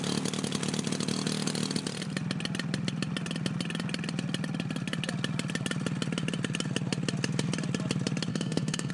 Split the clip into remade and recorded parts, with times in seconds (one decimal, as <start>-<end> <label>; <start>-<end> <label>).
0.0-8.3 recorded; 8.3-8.9 remade